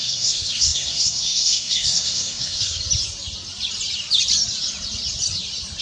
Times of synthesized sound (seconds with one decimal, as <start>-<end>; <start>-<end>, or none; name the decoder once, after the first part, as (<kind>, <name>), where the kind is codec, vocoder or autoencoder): 0.0-2.8 (codec, SNAC)